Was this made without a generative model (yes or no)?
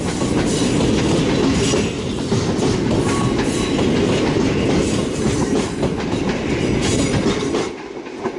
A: yes